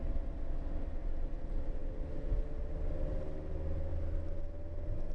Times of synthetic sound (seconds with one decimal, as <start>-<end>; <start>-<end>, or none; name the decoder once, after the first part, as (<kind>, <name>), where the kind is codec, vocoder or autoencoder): none